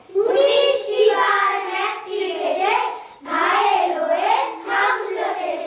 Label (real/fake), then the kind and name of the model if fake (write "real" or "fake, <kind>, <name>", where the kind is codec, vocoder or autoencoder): real